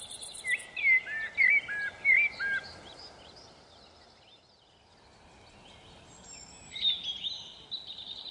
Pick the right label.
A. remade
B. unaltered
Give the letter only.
B